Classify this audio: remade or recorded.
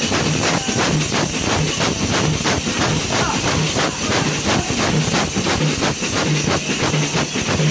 recorded